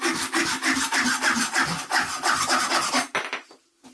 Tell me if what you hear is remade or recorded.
recorded